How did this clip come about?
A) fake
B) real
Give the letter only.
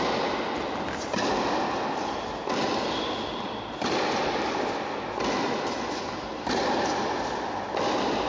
B